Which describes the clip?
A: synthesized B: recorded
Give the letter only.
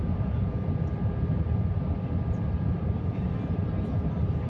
A